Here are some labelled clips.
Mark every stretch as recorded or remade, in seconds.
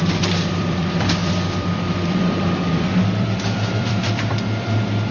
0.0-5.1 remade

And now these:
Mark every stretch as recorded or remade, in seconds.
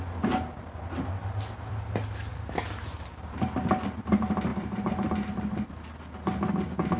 0.0-2.3 recorded; 2.3-3.6 remade; 3.6-4.5 recorded; 4.5-5.7 remade; 5.7-7.0 recorded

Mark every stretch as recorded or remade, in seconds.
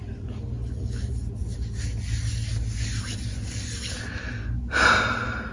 0.0-5.5 recorded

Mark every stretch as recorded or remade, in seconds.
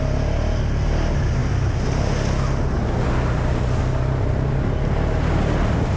0.0-6.0 recorded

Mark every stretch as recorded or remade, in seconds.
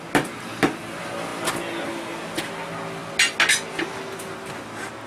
0.0-5.1 recorded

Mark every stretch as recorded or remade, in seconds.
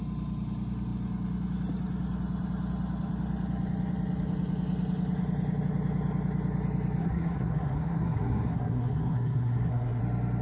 0.0-7.0 recorded; 7.0-10.0 remade; 10.0-10.4 recorded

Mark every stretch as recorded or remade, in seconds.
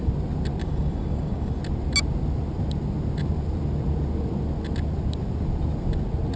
0.0-0.6 recorded; 0.6-1.6 remade; 1.6-6.4 recorded